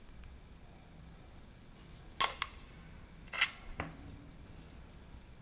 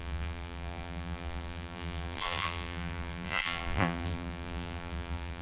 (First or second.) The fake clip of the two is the second